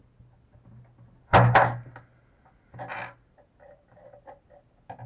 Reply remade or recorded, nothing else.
recorded